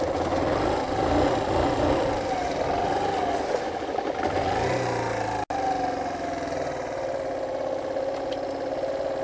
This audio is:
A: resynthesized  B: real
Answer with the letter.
B